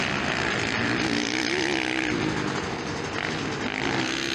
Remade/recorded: recorded